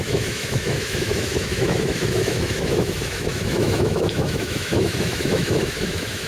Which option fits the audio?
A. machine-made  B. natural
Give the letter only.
A